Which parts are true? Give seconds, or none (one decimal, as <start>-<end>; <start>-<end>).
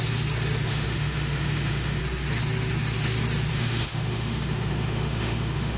0.0-0.7; 2.0-3.5